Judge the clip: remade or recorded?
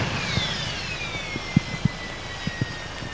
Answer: recorded